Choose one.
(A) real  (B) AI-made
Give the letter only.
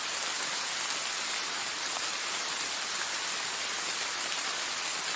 A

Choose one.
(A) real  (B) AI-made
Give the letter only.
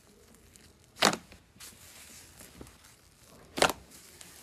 A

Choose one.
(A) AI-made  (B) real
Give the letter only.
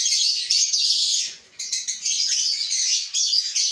A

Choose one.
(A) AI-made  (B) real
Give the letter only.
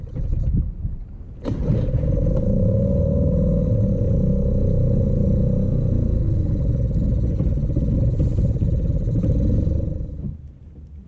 B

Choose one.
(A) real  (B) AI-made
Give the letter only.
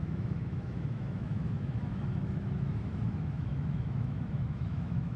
B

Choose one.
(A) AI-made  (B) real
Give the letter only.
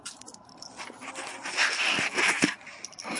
B